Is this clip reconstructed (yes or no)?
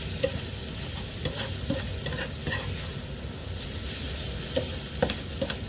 no